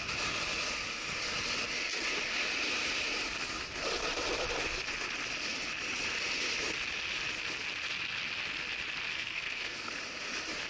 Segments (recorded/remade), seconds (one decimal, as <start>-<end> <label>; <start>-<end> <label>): 0.0-9.1 recorded; 9.1-9.9 remade; 9.9-10.7 recorded

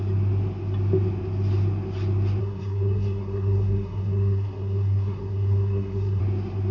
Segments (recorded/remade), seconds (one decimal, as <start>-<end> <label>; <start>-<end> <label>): 0.0-2.4 recorded; 2.4-6.2 remade; 6.2-6.7 recorded